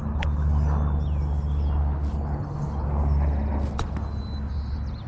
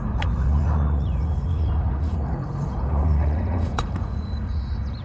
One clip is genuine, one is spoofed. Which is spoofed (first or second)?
second